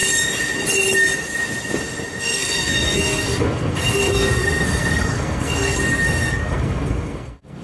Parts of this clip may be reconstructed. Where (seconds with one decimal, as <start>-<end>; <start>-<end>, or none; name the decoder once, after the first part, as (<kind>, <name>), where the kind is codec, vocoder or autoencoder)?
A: 2.2-7.6 (codec, SNAC)